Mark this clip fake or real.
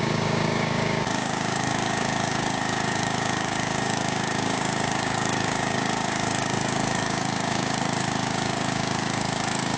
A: fake